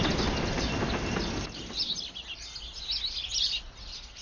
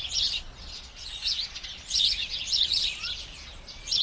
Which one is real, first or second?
first